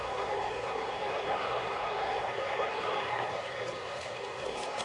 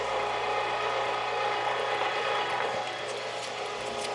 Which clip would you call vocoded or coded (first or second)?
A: first